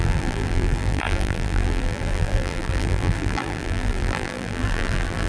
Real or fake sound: fake